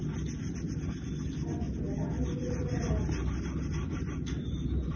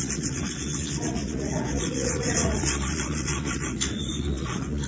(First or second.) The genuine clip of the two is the first